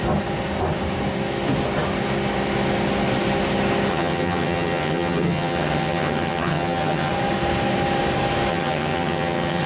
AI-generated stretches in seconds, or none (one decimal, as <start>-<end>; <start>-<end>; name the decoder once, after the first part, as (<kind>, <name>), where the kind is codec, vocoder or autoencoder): 3.9-7.1 (vocoder, HiFi-GAN); 8.5-9.7